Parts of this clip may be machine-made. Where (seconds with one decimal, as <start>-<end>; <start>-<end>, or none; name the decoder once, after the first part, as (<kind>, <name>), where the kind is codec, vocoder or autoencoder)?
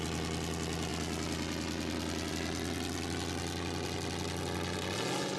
none